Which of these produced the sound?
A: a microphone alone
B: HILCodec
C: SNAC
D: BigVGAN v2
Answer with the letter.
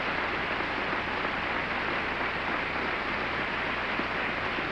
A